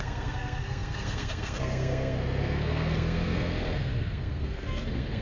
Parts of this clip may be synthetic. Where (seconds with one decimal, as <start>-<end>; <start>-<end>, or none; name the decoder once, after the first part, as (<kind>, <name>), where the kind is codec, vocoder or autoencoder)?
0.0-5.2 (codec, SNAC)